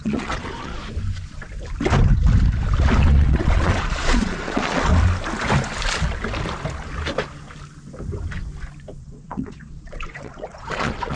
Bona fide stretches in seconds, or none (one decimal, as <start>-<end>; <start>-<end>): 0.8-3.0; 4.9-9.0